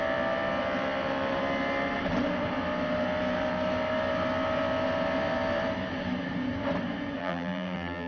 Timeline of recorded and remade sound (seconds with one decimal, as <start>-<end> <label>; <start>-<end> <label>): 0.0-7.2 recorded; 7.2-8.1 remade